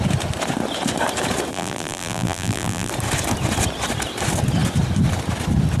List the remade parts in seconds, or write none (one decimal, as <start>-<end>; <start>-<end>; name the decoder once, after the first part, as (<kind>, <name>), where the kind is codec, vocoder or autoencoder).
1.5-2.9 (vocoder, BigVGAN v2)